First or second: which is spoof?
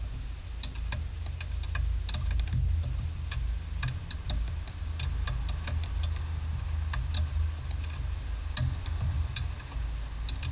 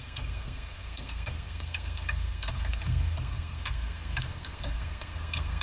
second